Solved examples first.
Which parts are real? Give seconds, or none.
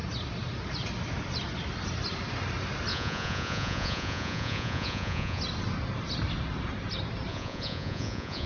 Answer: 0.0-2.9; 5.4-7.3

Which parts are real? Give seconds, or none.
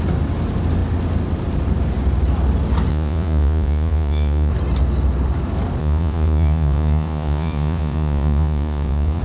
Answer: 0.0-2.9; 4.5-5.8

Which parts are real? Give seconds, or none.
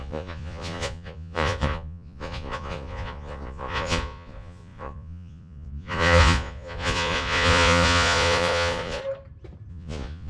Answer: 9.0-9.7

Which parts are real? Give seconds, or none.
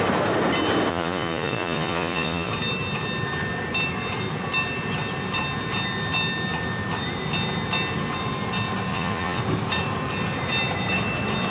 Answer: 0.0-0.9; 2.5-8.9; 9.4-11.5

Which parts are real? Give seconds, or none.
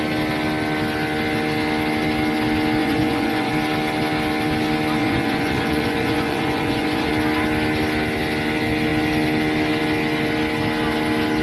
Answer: 0.0-2.8; 3.5-5.0; 7.1-11.4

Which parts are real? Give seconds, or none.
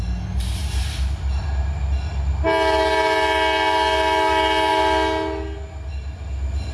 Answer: 0.0-6.7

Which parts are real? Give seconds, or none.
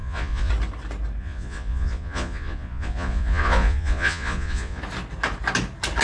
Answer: 0.5-1.2; 4.8-6.0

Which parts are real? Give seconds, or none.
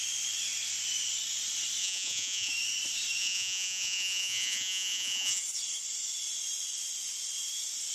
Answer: 0.0-1.8; 2.5-3.2; 5.4-7.9